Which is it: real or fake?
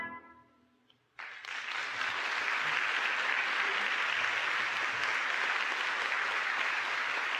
real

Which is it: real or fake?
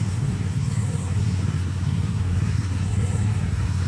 fake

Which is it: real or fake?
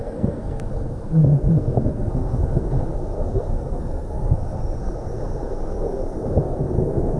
fake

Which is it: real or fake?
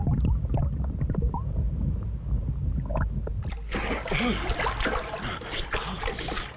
real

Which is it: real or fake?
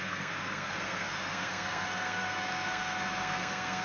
fake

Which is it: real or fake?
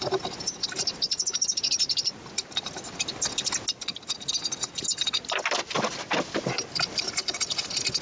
real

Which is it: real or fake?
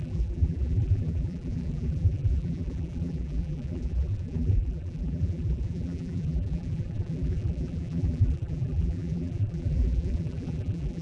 fake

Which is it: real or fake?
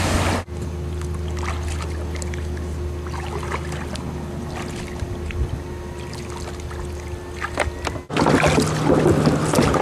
real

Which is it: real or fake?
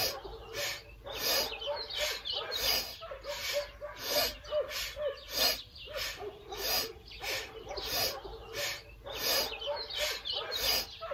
real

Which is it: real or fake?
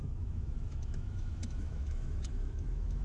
fake